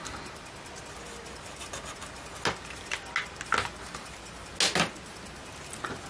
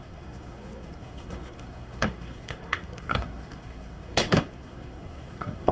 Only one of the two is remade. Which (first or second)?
second